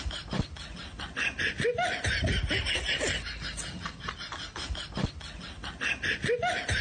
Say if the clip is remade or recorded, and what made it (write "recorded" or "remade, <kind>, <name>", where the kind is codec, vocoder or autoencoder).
recorded